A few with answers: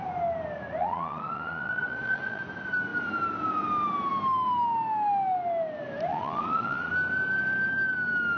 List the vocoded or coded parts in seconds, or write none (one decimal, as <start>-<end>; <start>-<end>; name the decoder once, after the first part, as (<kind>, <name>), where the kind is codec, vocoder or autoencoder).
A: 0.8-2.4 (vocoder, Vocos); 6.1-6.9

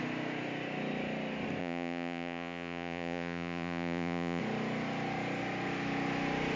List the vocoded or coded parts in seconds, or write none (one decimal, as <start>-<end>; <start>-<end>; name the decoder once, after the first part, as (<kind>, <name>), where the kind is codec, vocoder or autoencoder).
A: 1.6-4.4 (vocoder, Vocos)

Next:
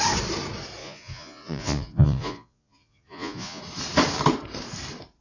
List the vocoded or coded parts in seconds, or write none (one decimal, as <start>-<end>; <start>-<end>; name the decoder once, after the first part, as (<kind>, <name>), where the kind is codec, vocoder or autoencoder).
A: 0.8-3.6 (vocoder, Vocos)

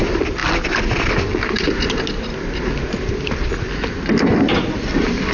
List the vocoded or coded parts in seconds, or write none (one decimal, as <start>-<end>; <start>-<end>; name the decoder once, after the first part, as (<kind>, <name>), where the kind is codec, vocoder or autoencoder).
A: none

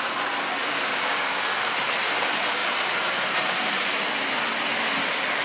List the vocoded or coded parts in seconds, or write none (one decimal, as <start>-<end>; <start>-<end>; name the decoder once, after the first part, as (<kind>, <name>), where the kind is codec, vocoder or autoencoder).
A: 0.6-1.3 (vocoder, BigVGAN v2); 2.6-4.4

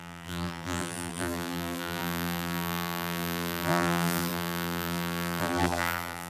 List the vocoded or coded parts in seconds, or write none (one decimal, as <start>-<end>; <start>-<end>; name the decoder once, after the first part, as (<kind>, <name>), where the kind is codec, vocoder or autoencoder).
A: 0.0-6.3 (vocoder, BigVGAN v2)

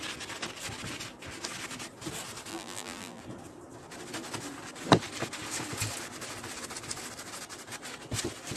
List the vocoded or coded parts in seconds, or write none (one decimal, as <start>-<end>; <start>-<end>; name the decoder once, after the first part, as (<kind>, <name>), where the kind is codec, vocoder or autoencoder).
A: 2.5-3.2 (vocoder, BigVGAN v2)